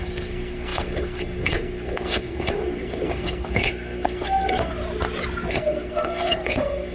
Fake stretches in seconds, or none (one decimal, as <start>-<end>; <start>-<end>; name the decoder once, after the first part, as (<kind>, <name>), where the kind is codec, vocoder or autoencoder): 0.0-4.7 (codec, SNAC); 5.5-6.9